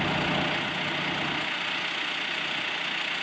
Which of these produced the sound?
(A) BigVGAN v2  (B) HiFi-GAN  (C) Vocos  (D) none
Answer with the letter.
D